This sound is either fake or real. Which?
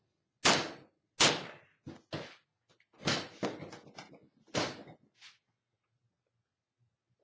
real